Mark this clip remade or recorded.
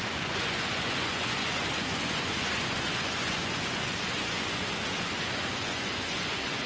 remade